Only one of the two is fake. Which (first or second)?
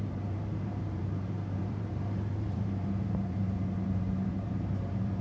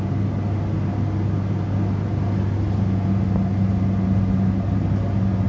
first